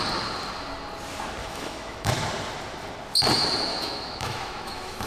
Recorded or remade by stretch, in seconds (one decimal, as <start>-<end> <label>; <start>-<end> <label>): 0.0-1.4 recorded; 1.4-2.1 remade; 2.1-3.7 recorded; 3.7-5.1 remade